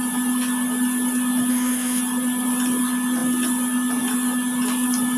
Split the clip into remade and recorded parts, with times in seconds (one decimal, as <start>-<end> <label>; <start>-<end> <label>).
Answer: 0.0-1.5 recorded; 1.5-2.0 remade; 2.0-5.2 recorded